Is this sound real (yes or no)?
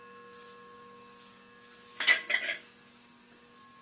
yes